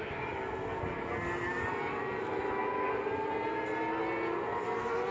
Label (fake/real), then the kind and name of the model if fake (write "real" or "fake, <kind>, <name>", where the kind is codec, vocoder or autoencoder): real